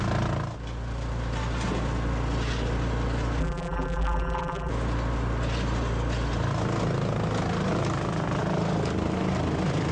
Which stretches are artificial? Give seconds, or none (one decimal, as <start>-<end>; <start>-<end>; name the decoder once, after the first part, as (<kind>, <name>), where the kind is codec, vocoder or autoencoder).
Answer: 3.4-4.7 (vocoder, BigVGAN v2)